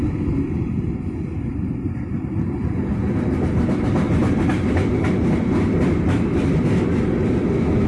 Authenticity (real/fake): real